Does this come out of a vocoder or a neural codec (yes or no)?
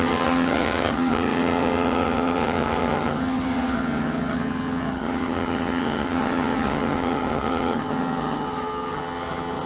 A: yes